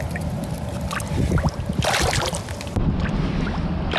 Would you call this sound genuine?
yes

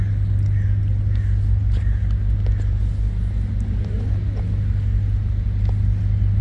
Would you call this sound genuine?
yes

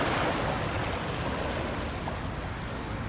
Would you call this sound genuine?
yes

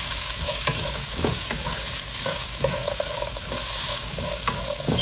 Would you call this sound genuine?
no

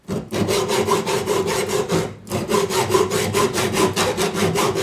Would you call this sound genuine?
yes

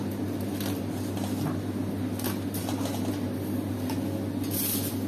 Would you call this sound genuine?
yes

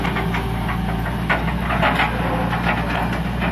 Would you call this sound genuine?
yes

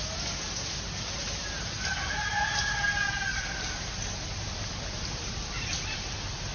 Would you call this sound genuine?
yes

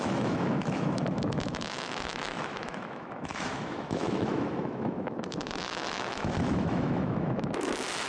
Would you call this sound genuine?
no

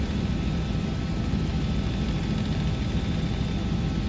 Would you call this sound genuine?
yes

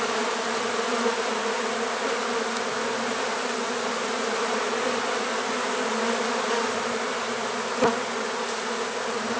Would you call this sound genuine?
yes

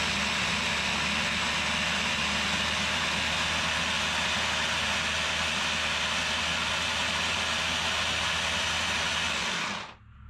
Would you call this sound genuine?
yes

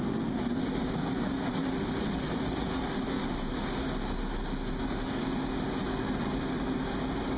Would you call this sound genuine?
yes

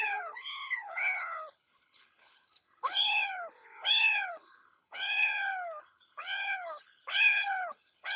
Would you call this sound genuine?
no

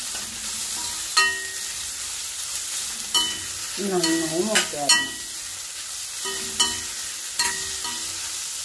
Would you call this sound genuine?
yes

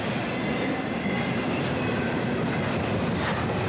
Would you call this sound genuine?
yes